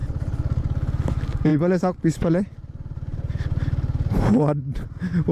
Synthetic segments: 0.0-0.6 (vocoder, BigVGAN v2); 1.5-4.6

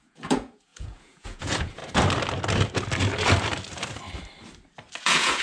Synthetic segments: 0.0-1.8 (vocoder, Vocos); 5.0-5.4

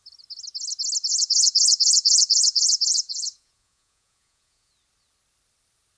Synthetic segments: 1.1-4.7 (vocoder, Vocos)